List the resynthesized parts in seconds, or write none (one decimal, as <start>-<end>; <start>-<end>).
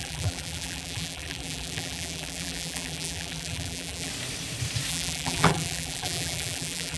0.0-4.1; 4.9-7.0